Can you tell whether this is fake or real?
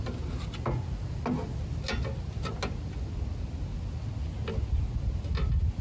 real